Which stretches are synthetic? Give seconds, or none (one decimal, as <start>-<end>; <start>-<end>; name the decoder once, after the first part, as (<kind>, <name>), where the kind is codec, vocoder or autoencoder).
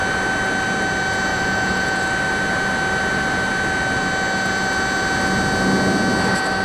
1.3-2.0 (vocoder, Vocos)